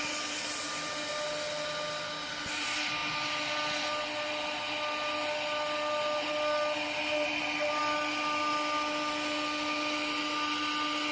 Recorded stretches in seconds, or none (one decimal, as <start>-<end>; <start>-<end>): 0.0-11.1